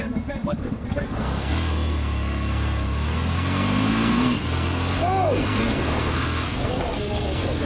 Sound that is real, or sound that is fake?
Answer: fake